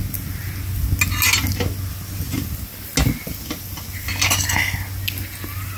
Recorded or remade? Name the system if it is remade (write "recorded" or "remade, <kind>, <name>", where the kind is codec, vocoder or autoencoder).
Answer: recorded